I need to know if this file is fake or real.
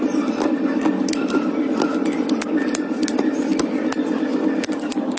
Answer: real